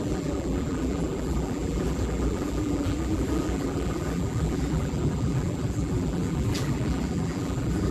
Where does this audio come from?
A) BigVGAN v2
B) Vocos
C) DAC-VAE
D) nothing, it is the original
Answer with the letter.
A